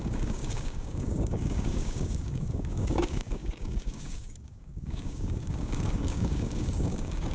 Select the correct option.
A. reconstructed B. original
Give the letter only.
A